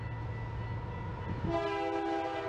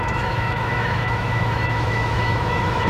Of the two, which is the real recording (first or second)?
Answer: first